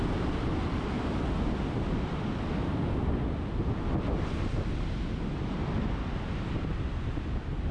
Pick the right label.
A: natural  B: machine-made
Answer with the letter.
A